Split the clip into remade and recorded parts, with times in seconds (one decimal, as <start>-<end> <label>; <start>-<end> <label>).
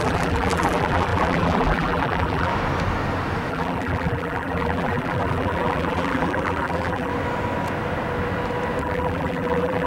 0.0-2.5 remade; 2.5-3.5 recorded; 3.5-7.1 remade; 7.1-8.8 recorded; 8.8-9.9 remade